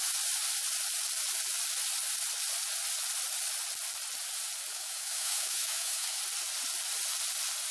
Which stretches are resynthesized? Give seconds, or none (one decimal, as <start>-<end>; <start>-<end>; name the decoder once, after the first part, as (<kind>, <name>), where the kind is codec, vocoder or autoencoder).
4.7-6.2 (autoencoder, DAC-VAE)